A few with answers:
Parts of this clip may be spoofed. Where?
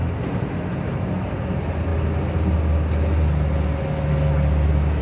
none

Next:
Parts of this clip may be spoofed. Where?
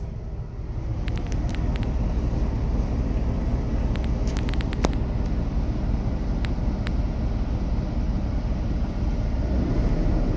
0.9-1.5 (vocoder, BigVGAN v2)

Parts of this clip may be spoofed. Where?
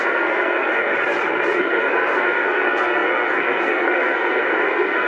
0.0-0.9 (codec, SNAC); 1.6-5.1